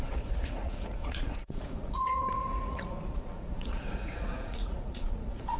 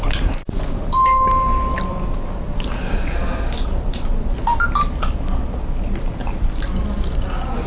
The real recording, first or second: second